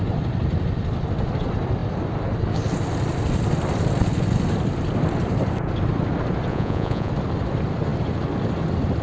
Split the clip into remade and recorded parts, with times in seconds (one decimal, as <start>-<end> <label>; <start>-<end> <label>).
0.0-6.5 recorded; 6.5-7.1 remade; 7.1-9.0 recorded